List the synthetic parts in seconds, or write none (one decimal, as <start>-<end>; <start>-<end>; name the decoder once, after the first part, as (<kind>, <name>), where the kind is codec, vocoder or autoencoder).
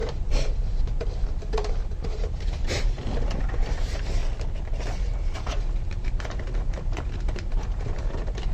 0.0-4.2 (vocoder, BigVGAN v2); 5.0-8.5